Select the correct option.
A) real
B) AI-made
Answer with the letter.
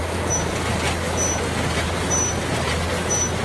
A